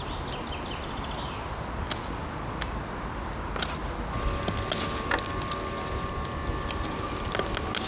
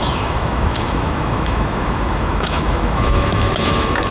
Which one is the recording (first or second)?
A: first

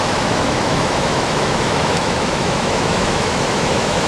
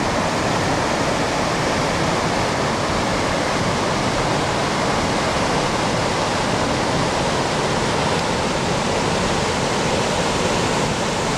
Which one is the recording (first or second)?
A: second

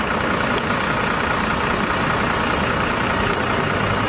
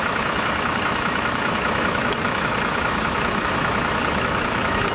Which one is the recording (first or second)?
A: first